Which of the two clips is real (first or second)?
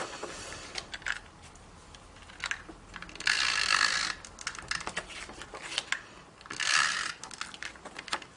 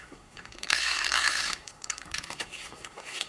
first